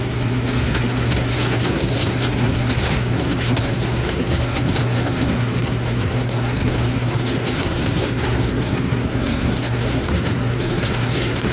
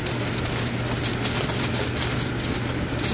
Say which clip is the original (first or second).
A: second